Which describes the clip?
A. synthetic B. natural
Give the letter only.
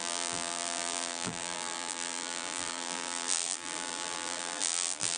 A